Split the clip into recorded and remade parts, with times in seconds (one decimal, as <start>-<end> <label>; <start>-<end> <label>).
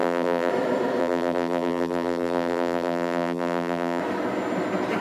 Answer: 0.0-0.5 remade; 0.5-1.0 recorded; 1.0-4.0 remade; 4.0-5.0 recorded